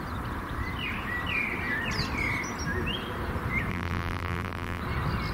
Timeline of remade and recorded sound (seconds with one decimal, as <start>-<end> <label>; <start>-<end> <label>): 0.0-3.7 recorded; 3.7-4.8 remade; 4.8-5.3 recorded